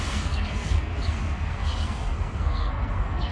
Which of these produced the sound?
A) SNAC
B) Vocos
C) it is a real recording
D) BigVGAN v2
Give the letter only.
A